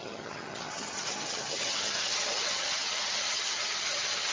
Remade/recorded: remade